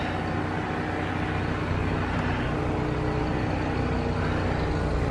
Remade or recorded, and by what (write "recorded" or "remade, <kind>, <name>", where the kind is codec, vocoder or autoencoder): recorded